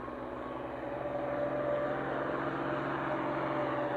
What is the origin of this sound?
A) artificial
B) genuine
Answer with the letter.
B